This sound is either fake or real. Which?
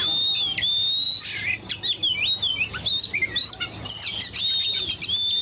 real